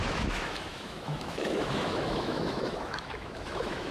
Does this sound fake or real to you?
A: fake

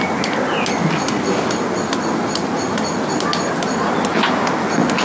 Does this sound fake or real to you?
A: real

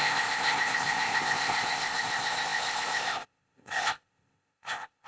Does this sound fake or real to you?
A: fake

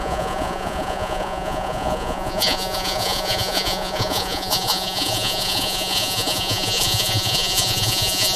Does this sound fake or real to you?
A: fake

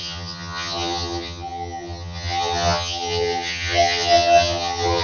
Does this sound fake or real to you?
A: fake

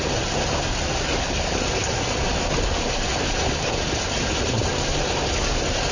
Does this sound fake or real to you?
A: real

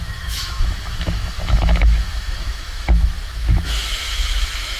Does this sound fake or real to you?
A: fake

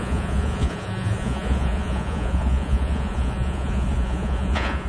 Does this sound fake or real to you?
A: fake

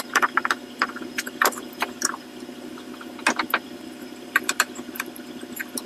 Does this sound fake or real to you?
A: real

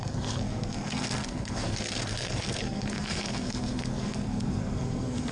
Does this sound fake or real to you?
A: fake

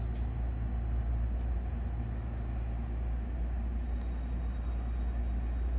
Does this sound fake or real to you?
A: real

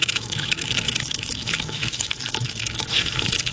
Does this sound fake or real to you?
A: fake